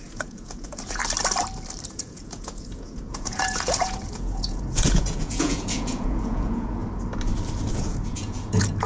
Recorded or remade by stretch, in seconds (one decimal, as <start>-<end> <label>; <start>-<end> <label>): 0.0-1.0 remade; 1.0-1.9 recorded; 1.9-6.8 remade; 6.8-7.7 recorded; 7.7-8.9 remade